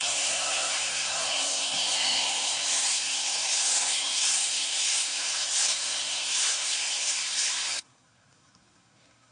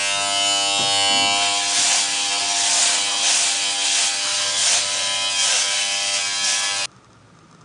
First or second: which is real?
second